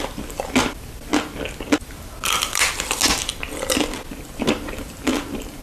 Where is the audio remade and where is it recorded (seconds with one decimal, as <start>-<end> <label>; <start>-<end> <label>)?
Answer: 0.0-1.1 remade; 1.1-4.4 recorded; 4.4-5.6 remade